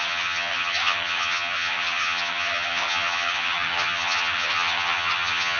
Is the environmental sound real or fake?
fake